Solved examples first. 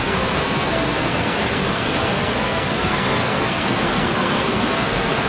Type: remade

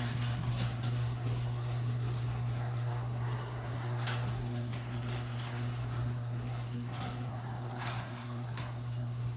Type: remade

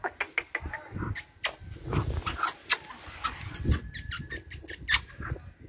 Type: recorded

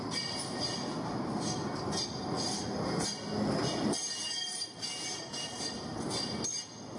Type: recorded